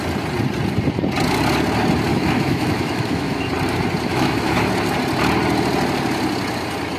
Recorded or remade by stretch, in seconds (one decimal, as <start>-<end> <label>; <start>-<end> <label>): 0.0-2.1 recorded; 2.1-3.4 remade; 3.4-4.1 recorded; 4.1-4.7 remade; 4.7-7.0 recorded